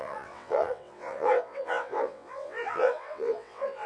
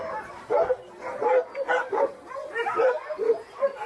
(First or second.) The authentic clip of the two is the second